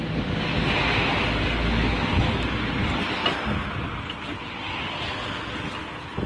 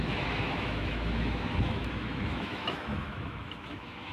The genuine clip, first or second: first